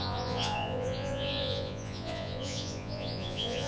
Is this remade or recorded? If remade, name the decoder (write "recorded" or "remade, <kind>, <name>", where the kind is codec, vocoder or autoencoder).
remade, vocoder, Vocos